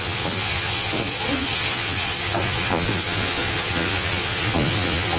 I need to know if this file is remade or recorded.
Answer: remade